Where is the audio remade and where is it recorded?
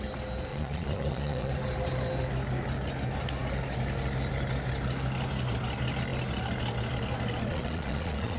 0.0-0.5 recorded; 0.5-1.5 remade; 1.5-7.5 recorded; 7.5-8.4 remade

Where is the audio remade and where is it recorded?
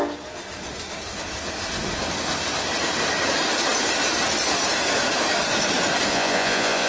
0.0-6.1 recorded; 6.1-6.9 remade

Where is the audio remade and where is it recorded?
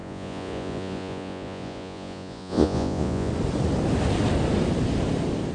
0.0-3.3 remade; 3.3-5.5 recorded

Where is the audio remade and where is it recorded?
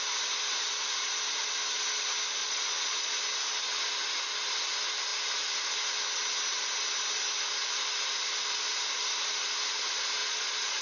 0.0-2.4 recorded; 2.4-3.1 remade; 3.1-10.2 recorded; 10.2-10.8 remade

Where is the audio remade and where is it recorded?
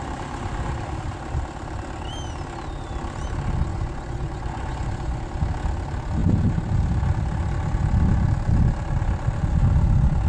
0.0-3.7 recorded; 3.7-5.2 remade; 5.2-10.3 recorded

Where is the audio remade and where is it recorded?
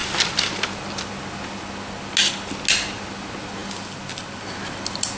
0.0-5.2 recorded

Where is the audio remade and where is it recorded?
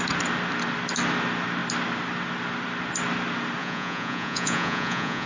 0.0-3.6 recorded; 3.6-5.3 remade